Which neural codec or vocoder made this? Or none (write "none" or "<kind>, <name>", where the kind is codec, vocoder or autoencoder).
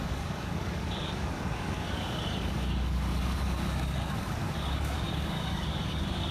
codec, DAC